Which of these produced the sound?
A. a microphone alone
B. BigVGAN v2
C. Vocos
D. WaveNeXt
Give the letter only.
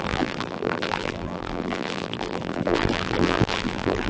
B